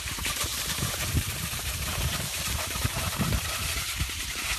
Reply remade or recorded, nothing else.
remade